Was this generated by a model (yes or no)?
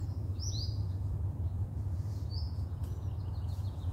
yes